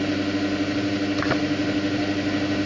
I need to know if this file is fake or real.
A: real